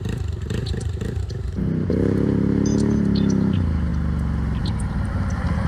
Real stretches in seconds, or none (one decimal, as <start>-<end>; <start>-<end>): 3.9-4.6